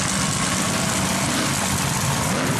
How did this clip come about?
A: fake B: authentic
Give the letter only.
B